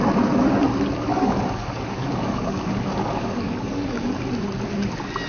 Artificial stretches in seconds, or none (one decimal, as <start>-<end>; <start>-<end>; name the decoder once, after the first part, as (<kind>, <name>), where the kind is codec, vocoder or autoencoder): 1.1-4.2 (codec, DAC)